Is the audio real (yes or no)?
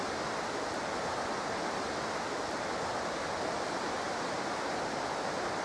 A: yes